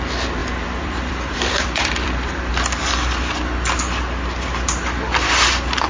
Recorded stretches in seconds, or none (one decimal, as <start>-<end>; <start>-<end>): 0.0-0.4; 2.5-5.9